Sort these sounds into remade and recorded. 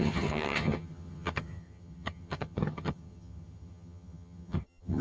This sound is remade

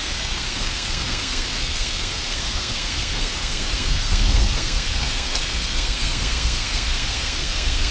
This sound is remade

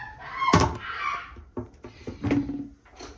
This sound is recorded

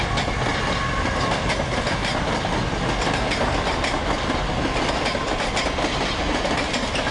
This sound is recorded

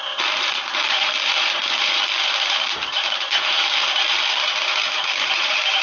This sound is remade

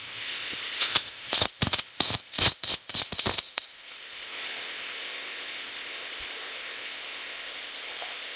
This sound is remade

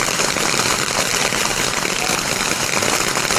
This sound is recorded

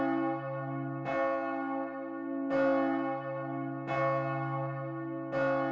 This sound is recorded